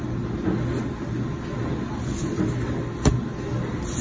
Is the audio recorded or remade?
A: recorded